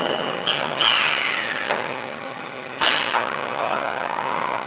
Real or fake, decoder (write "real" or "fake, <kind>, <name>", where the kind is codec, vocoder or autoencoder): fake, vocoder, HiFi-GAN